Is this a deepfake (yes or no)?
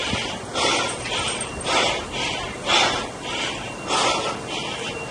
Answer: no